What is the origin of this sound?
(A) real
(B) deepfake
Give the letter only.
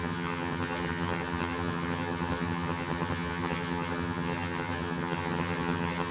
B